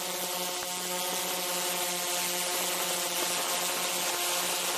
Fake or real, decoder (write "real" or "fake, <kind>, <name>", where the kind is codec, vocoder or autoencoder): real